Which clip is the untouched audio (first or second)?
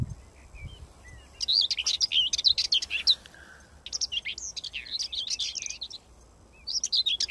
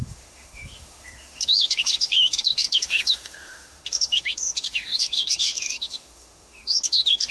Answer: first